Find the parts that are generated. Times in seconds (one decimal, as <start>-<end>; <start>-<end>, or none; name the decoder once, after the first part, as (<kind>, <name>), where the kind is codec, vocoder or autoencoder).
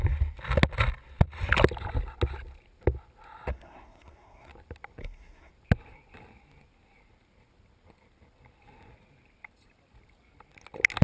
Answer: 3.5-4.5 (codec, SNAC); 5.0-5.5